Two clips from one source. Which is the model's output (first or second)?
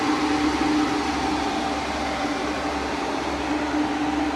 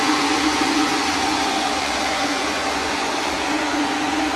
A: second